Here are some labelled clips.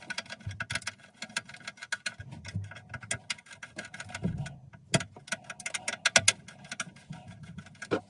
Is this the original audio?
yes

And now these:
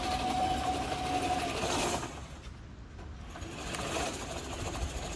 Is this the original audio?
yes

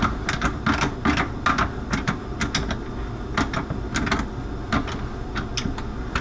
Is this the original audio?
yes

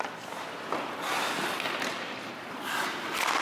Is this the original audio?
no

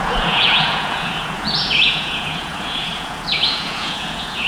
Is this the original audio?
no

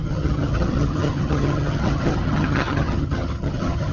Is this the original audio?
no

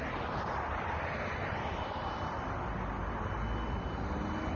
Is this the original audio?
yes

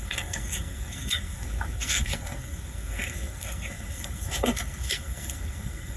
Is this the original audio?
no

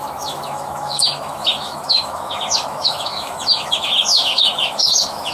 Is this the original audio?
no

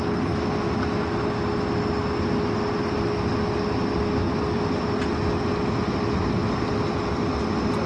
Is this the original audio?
yes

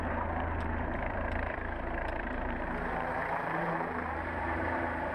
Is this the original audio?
no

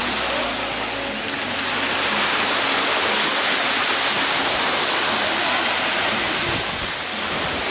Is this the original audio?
yes